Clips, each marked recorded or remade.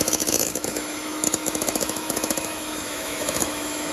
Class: remade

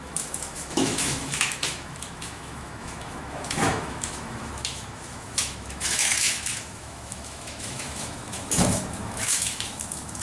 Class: remade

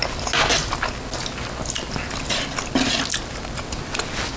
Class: recorded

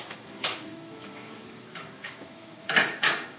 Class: remade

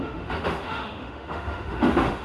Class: remade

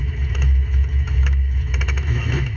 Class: remade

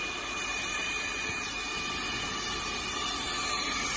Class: recorded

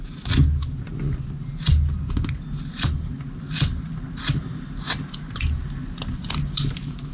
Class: recorded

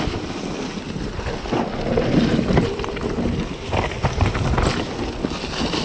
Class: recorded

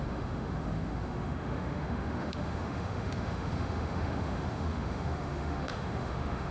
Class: remade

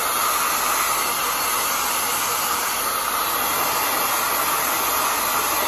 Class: recorded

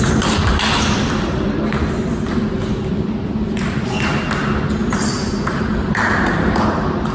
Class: recorded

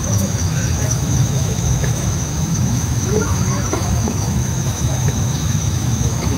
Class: remade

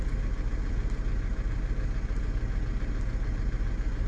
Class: recorded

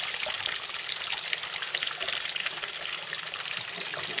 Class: recorded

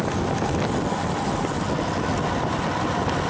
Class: recorded